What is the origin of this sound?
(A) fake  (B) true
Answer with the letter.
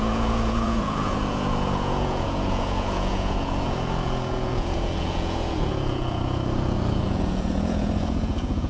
A